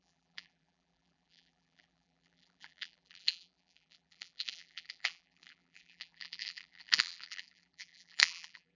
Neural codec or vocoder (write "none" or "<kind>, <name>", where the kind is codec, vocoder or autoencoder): vocoder, BigVGAN v2